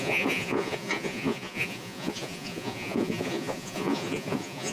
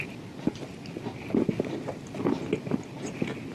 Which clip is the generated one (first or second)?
first